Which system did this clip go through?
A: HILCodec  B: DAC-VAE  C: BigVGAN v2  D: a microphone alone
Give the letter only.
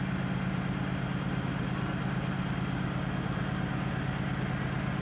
D